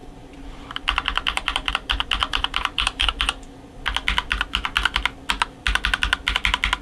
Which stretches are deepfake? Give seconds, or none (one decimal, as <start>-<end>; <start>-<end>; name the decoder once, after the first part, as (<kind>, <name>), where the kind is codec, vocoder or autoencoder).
0.0-1.7 (vocoder, BigVGAN v2); 2.2-3.2